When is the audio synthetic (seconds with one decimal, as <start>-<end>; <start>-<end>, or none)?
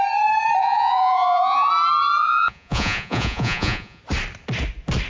0.6-1.7; 2.2-4.0